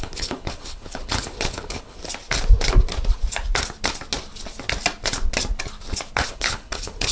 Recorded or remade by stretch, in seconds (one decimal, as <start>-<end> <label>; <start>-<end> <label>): 0.0-2.0 remade; 2.0-6.3 recorded; 6.3-7.1 remade